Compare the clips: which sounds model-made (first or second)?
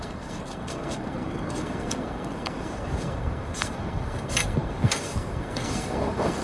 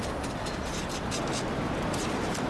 first